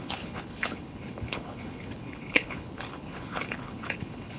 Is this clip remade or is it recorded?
remade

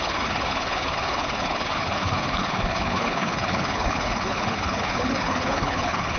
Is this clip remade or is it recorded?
remade